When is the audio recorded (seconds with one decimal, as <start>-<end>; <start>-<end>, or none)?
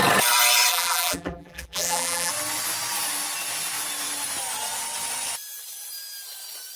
0.0-0.7; 2.3-6.8